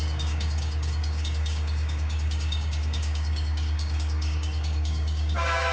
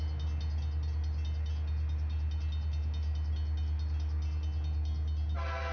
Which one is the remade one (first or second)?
first